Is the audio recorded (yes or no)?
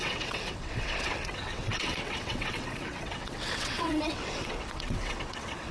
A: no